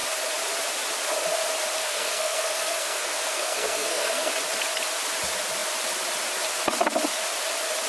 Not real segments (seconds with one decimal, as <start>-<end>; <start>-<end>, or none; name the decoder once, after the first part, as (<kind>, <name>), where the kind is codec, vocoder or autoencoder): 1.8-4.3 (codec, SNAC)